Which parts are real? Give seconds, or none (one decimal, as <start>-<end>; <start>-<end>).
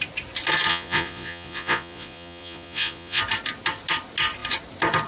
0.0-0.7; 3.2-5.1